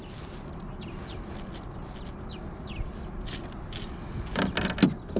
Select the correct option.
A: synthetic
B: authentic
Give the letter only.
B